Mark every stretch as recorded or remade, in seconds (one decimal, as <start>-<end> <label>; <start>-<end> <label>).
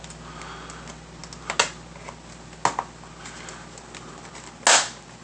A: 0.0-5.2 recorded